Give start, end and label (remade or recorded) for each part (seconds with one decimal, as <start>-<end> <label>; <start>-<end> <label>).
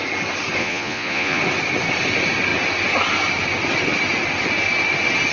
0.0-0.6 recorded; 0.6-1.4 remade; 1.4-5.3 recorded